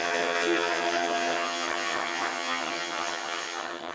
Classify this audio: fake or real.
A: fake